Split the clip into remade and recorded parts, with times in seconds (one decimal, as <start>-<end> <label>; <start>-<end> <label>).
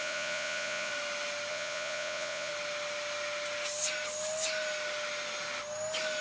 0.0-0.9 remade; 0.9-1.5 recorded; 1.5-2.5 remade; 2.5-6.2 recorded